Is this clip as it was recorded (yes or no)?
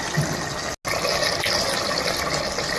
yes